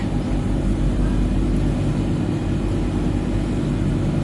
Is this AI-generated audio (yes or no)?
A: no